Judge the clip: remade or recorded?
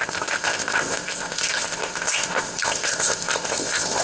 remade